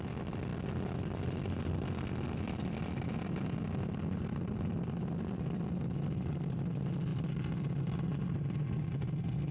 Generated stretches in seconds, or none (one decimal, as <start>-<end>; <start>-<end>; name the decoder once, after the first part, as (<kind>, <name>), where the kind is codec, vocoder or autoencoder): none